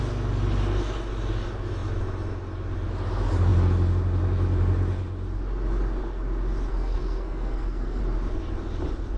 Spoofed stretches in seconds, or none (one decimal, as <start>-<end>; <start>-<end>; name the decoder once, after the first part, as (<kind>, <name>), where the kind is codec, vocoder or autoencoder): 6.7-8.0 (codec, SNAC)

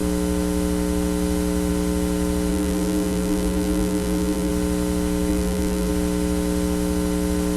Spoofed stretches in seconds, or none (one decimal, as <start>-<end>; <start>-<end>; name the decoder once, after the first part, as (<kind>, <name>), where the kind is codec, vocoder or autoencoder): 2.5-4.5 (vocoder, BigVGAN v2); 5.3-5.9

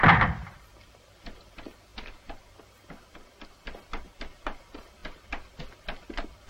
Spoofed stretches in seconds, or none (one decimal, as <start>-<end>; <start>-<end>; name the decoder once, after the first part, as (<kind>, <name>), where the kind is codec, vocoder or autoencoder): none

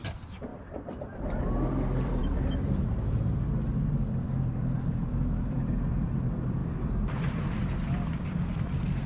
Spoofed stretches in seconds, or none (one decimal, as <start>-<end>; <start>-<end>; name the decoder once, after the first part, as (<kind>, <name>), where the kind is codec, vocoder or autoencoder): 0.0-0.5 (vocoder, BigVGAN v2); 1.2-2.2; 4.4-9.1

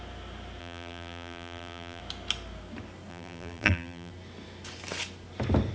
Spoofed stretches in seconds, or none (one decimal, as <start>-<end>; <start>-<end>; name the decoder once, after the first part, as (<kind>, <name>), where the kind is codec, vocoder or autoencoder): 0.6-2.0 (vocoder, BigVGAN v2); 3.1-4.1

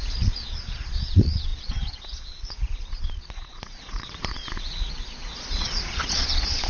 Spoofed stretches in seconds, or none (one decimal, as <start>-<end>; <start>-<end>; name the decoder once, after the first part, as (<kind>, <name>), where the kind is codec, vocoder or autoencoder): 0.0-6.7 (vocoder, Vocos)

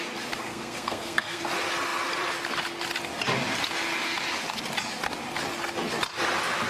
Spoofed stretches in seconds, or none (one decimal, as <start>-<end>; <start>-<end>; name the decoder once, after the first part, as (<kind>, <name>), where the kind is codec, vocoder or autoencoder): 0.5-1.4 (codec, SNAC)